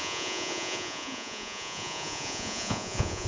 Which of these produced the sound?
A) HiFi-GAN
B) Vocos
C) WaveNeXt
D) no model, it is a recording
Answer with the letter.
B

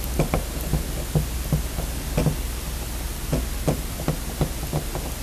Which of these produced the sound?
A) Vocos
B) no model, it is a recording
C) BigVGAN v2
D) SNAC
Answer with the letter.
B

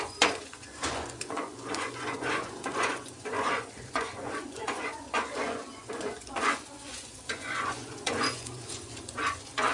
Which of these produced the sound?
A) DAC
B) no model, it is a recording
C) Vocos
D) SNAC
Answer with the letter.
C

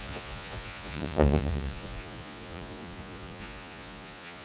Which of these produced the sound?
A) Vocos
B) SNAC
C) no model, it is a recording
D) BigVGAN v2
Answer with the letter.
A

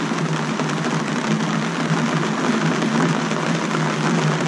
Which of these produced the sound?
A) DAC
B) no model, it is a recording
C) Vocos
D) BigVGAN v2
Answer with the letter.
B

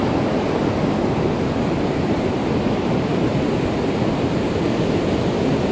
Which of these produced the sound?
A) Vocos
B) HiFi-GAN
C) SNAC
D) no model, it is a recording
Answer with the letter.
D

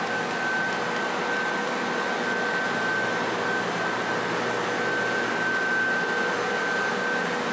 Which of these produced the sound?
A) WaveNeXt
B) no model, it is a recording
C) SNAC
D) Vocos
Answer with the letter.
B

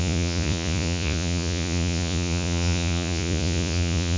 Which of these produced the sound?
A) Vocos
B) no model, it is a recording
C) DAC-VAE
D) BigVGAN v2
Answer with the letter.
A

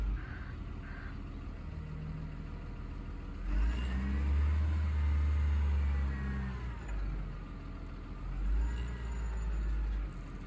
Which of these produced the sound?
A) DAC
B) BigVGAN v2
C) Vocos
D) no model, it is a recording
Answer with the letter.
D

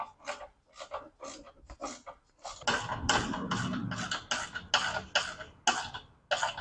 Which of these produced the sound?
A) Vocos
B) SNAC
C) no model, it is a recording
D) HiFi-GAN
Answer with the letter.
C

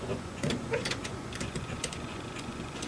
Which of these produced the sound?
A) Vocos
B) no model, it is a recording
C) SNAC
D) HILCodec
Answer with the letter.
A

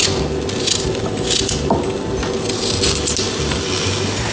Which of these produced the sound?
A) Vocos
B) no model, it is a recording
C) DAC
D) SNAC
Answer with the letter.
B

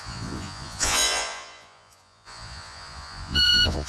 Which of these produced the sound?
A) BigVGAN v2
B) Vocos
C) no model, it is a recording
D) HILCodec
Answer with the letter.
B